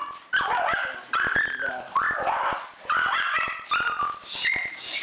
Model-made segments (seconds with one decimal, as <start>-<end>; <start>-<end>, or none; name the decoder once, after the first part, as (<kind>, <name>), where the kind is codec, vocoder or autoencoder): none